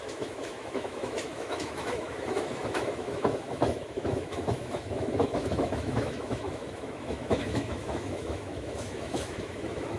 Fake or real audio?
fake